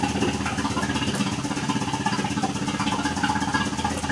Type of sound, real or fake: real